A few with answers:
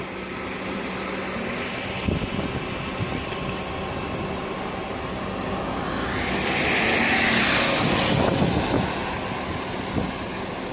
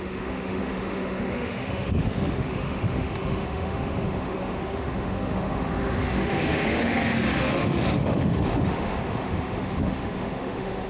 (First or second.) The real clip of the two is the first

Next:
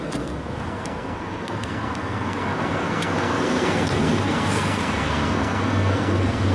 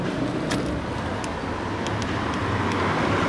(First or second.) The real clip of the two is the second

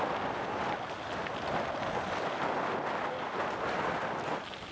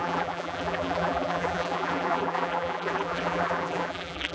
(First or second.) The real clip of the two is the first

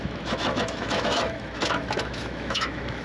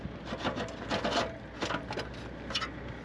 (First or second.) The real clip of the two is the second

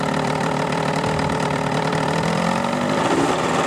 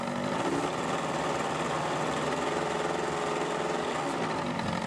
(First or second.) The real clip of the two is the second